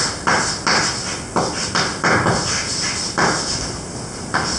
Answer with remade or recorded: recorded